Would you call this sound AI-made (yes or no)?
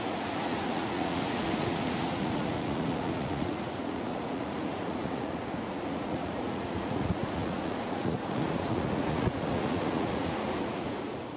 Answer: yes